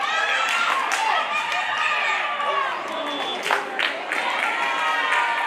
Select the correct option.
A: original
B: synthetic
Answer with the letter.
A